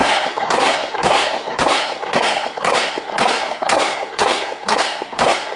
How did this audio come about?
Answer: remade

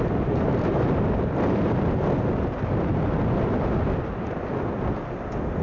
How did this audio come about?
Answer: recorded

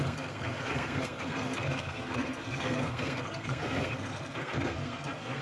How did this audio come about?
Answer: remade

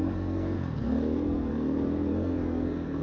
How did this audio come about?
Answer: remade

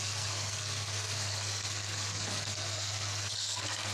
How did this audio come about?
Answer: remade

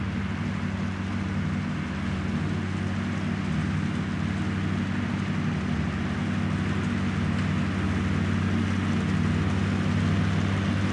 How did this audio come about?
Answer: recorded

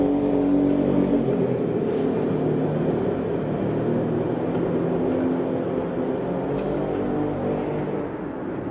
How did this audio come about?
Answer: recorded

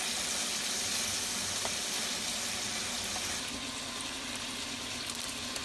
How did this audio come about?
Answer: recorded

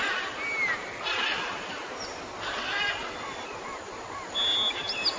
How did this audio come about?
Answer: recorded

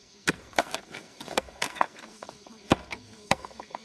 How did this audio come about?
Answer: remade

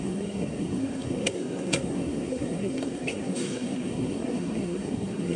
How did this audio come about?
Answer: remade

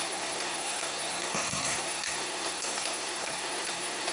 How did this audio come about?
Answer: remade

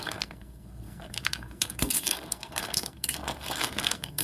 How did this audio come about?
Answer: remade